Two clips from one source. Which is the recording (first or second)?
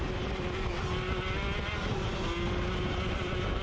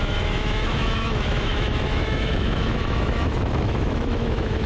first